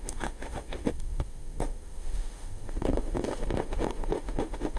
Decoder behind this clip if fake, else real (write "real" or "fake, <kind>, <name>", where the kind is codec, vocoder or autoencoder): fake, autoencoder, DAC-VAE